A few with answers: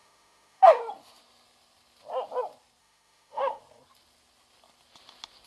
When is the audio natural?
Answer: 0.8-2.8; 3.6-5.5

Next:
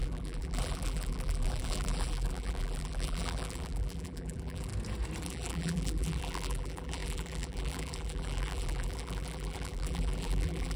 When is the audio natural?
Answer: 4.7-5.2